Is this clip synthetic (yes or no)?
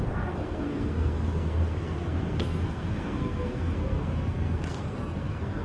yes